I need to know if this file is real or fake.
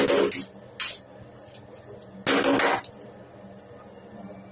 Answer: real